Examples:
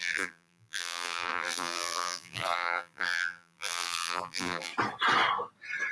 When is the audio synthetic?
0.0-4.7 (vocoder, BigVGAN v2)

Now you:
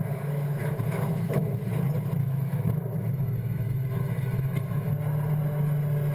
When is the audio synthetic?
0.6-1.7 (autoencoder, DAC-VAE); 2.2-4.9

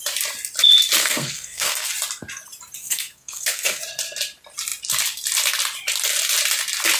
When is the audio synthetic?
1.0-1.9 (codec, SNAC); 2.8-3.8

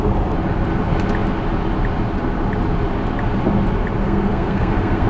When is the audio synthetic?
4.0-5.1 (codec, SNAC)

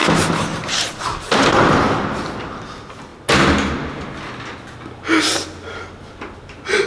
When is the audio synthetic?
none